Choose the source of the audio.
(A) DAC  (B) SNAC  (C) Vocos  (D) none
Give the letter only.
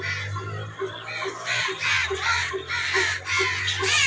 D